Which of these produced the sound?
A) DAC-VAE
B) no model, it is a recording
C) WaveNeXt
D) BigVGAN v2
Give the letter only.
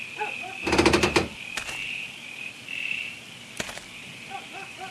B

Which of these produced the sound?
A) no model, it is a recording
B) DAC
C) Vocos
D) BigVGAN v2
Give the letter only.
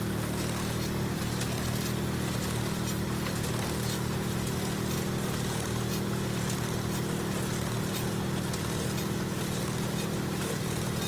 A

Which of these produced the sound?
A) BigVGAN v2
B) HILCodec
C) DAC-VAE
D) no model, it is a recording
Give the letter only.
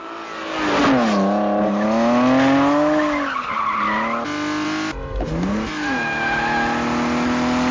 D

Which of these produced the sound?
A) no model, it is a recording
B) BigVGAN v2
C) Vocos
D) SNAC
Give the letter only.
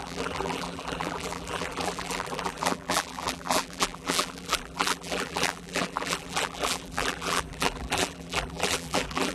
B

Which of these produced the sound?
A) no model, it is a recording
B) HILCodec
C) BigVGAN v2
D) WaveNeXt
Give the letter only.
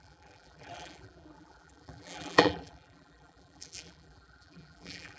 C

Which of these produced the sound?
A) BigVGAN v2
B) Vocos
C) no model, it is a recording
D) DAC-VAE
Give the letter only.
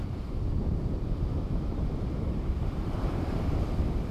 A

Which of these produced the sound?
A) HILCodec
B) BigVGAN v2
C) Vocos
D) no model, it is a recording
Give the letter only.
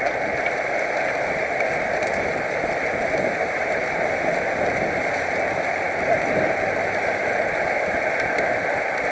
B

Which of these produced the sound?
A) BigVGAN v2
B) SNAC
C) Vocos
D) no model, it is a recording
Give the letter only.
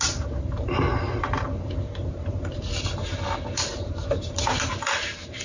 A